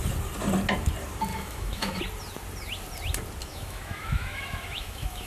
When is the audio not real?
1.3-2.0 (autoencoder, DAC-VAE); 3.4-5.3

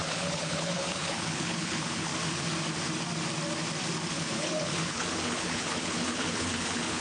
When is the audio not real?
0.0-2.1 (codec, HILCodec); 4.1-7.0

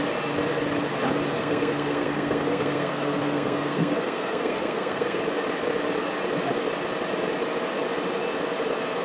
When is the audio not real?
1.3-5.2 (codec, SNAC)